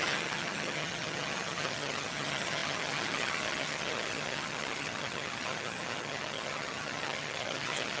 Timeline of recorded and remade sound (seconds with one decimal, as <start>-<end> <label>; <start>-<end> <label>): 0.0-8.0 remade